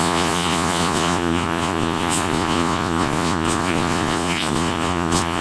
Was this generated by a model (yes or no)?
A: yes